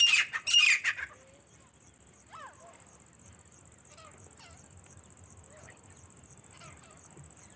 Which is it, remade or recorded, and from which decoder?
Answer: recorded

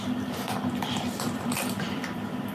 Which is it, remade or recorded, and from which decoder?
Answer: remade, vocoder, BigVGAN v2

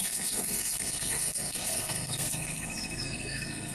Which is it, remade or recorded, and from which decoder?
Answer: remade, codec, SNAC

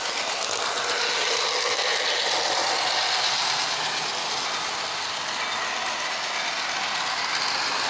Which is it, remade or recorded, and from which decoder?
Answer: recorded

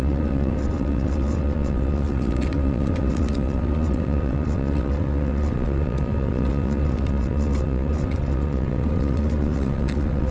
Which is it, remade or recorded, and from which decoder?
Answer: remade, vocoder, WaveNeXt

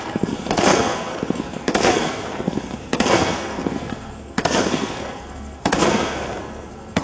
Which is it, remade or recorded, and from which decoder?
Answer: remade, codec, SNAC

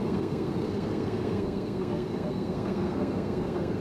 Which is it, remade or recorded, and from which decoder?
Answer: remade, codec, SNAC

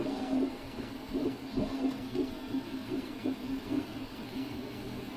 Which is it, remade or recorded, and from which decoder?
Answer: remade, codec, SNAC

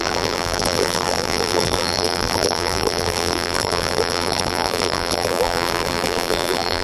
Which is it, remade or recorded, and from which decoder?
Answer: remade, vocoder, BigVGAN v2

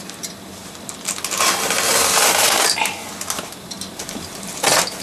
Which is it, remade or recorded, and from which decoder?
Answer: recorded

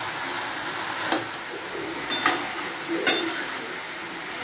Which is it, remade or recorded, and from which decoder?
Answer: recorded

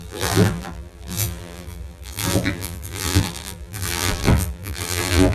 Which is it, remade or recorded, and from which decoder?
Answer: remade, vocoder, BigVGAN v2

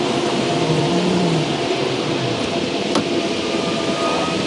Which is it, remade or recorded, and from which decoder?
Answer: remade, vocoder, BigVGAN v2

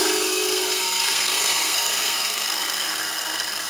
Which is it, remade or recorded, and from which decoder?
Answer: remade, codec, SNAC